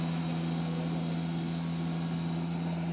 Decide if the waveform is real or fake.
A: real